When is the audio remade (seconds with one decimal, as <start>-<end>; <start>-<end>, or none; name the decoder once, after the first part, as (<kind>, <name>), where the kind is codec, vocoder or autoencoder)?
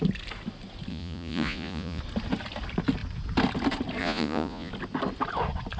0.9-2.0 (vocoder, Vocos); 4.0-4.7